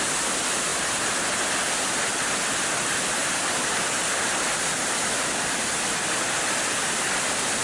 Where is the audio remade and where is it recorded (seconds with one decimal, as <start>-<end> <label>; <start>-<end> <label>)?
0.0-7.6 recorded